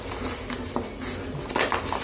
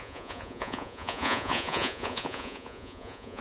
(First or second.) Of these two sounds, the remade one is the second